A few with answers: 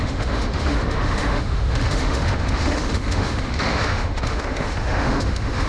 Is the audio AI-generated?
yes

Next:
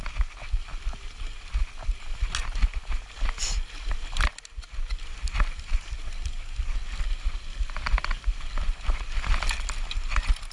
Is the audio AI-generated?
no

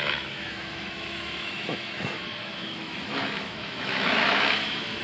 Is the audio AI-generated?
yes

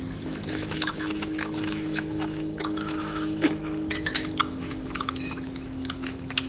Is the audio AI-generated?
yes